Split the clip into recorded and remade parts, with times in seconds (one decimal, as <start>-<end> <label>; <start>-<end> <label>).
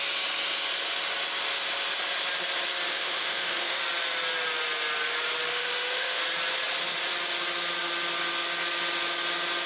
0.0-2.9 recorded; 2.9-3.8 remade; 3.8-5.5 recorded; 5.5-6.2 remade; 6.2-9.7 recorded